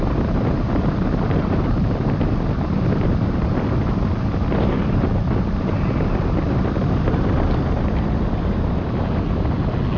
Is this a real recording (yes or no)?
yes